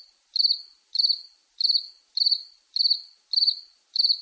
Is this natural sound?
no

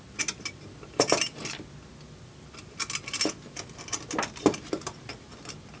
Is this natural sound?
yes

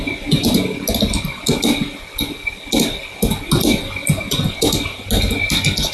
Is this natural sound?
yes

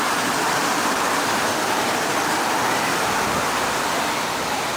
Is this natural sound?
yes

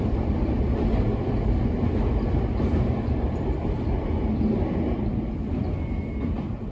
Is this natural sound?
no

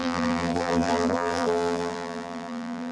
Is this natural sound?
no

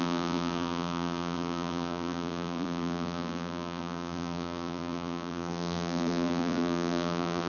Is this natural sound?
no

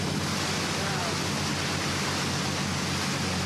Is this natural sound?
yes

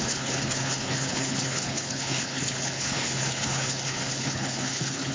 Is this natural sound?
no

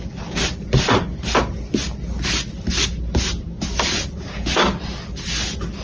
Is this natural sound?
yes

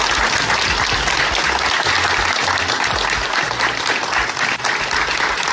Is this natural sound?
yes